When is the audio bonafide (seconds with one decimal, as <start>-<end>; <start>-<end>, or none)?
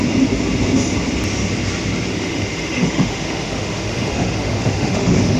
0.0-2.1